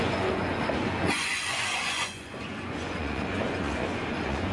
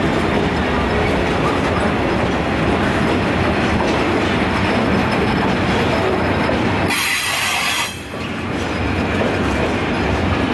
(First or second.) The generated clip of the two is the first